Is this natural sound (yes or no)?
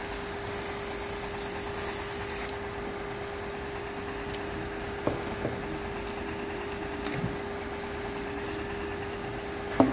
yes